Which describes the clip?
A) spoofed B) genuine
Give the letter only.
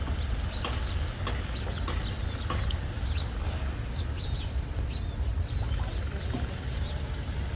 B